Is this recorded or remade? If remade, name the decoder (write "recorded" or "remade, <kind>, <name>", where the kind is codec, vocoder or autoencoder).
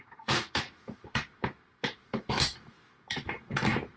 remade, autoencoder, DAC-VAE